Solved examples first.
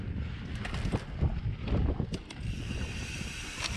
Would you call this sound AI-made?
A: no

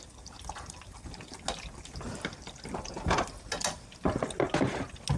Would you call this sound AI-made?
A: no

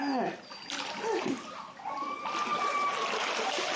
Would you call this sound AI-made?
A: no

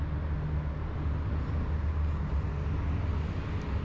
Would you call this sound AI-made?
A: no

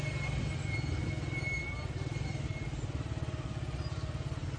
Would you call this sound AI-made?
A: no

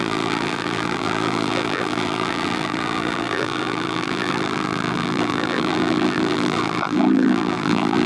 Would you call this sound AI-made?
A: yes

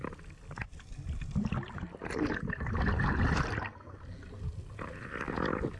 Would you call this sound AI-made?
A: no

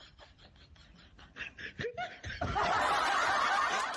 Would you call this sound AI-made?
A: yes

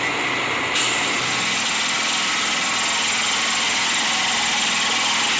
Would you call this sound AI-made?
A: no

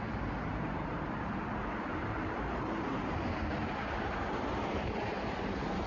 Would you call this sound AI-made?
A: yes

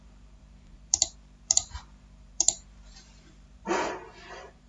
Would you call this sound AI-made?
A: yes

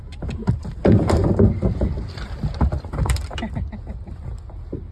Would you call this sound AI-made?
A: yes